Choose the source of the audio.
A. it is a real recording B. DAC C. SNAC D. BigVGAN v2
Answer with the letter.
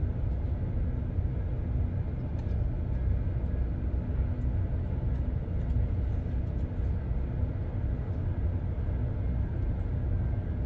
A